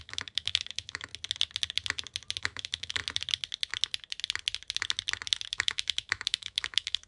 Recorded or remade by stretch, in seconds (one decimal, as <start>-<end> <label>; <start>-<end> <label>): 0.0-1.1 remade; 1.1-2.4 recorded; 2.4-3.0 remade; 3.0-5.5 recorded; 5.5-7.1 remade